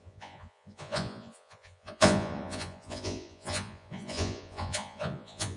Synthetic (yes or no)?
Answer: yes